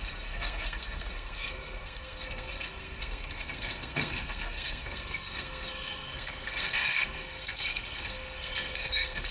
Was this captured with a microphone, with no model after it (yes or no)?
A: no